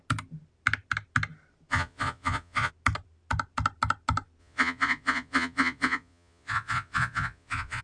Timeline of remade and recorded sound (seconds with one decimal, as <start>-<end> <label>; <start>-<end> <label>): 0.0-1.7 recorded; 1.7-2.7 remade; 2.7-4.4 recorded; 4.4-7.8 remade